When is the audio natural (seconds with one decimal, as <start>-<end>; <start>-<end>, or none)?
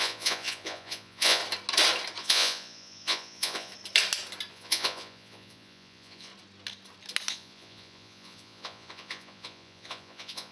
1.4-2.2; 3.7-4.5; 6.3-7.3